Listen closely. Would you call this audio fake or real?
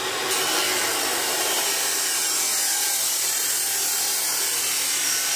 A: real